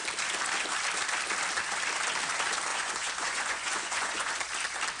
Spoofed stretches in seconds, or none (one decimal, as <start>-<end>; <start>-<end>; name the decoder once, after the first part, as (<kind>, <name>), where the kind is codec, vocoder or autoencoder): 2.7-4.3 (vocoder, Vocos)